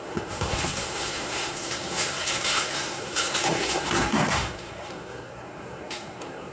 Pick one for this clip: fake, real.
fake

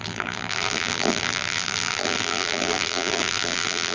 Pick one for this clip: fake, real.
fake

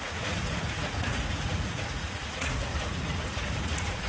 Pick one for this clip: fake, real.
fake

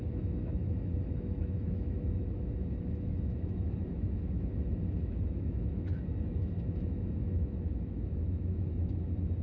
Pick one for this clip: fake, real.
fake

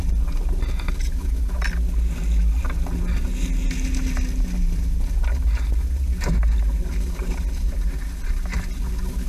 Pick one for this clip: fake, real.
real